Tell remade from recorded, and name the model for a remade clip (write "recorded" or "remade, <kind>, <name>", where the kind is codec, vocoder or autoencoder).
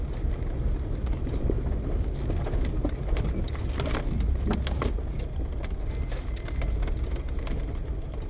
recorded